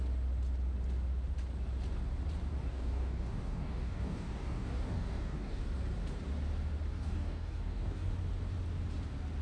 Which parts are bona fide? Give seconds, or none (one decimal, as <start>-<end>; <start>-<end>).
0.0-2.7; 5.6-6.9; 8.1-9.4